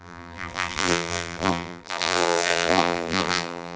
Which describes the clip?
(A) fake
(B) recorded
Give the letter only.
A